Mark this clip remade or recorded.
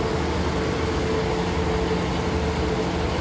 recorded